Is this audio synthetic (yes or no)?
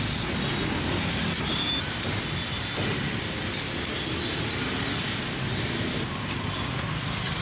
no